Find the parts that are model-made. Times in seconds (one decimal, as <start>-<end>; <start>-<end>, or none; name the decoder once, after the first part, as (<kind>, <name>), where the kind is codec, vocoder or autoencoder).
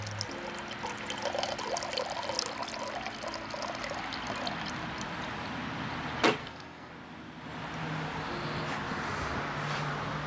6.4-6.9 (codec, SNAC)